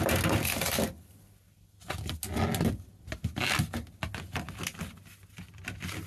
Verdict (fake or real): real